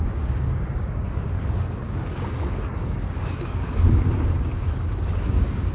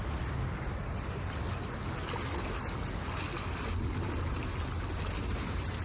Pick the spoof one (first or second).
first